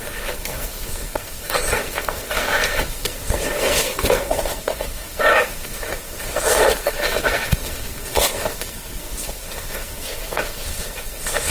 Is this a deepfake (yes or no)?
yes